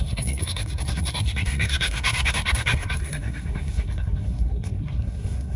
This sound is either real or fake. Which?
fake